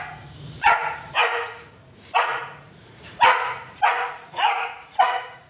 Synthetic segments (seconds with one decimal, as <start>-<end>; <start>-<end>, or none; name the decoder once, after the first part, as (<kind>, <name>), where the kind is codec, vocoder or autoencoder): 0.0-5.5 (vocoder, Vocos)